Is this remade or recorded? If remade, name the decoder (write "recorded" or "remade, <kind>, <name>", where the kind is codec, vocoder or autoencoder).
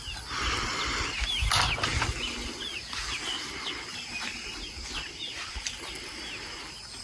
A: recorded